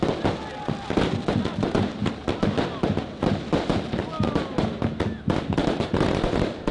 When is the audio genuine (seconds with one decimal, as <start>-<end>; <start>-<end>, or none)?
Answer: 0.0-6.7